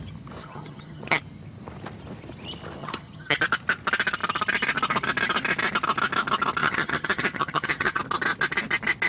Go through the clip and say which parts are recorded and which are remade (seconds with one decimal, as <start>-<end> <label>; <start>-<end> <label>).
0.0-0.4 recorded; 0.4-1.2 remade; 1.2-2.8 recorded; 2.8-3.4 remade; 3.4-6.6 recorded; 6.6-8.0 remade; 8.0-9.1 recorded